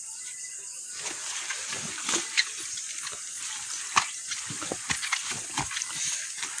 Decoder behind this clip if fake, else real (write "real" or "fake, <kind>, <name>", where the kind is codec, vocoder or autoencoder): real